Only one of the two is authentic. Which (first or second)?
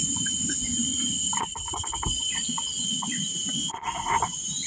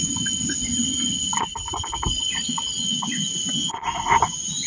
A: second